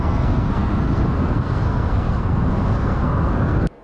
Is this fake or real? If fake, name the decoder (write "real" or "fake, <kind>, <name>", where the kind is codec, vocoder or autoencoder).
fake, codec, SNAC